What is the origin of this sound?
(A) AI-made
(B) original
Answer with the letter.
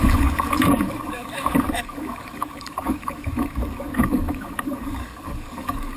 A